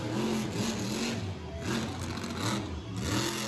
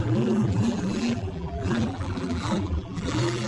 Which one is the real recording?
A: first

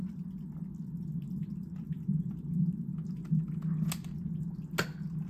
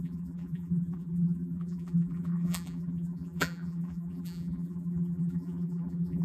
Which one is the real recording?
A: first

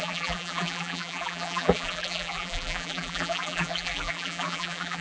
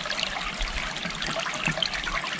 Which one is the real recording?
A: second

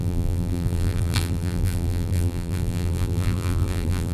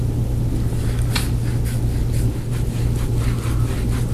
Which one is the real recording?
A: second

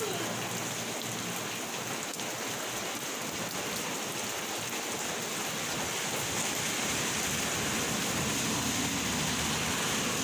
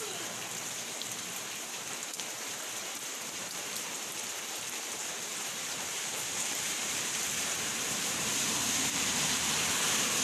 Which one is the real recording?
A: first